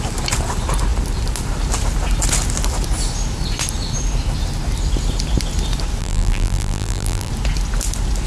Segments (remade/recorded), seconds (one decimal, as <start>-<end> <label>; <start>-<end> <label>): 0.0-6.0 recorded; 6.0-7.3 remade; 7.3-8.3 recorded